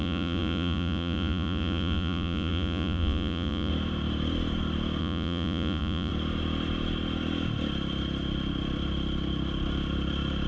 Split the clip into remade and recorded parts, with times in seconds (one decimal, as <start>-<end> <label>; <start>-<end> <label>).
0.0-3.7 remade; 3.7-5.0 recorded; 5.0-6.1 remade; 6.1-10.5 recorded